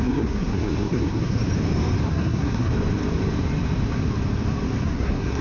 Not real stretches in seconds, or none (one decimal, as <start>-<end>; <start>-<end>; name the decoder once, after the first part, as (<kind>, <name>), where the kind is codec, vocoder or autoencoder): 0.0-1.4 (codec, SNAC); 2.1-2.7; 4.8-5.4